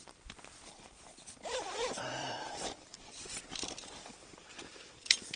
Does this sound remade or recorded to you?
remade